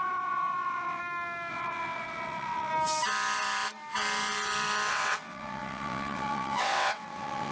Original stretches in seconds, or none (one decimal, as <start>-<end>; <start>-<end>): 1.0-1.5; 2.7-4.9